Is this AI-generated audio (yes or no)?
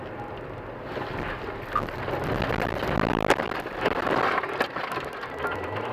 no